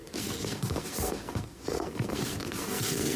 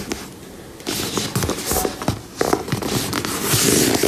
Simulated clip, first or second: first